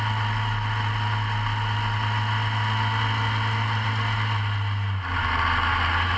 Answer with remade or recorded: recorded